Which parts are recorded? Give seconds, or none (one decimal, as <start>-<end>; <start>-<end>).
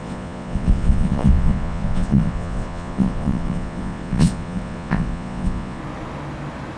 5.8-6.8